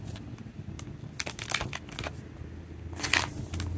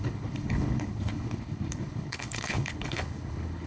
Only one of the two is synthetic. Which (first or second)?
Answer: second